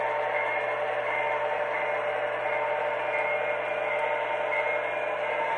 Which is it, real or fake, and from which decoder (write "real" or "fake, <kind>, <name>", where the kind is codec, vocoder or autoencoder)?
real